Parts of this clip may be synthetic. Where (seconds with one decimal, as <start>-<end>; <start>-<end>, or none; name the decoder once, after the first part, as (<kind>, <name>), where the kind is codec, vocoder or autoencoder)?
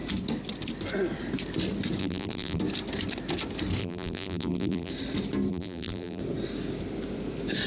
2.0-2.6 (vocoder, BigVGAN v2); 3.8-4.9; 5.5-6.2